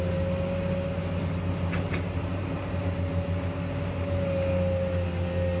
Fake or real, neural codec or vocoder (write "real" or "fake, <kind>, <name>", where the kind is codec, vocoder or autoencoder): real